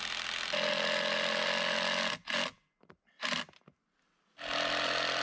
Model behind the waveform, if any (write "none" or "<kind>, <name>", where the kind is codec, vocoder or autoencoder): none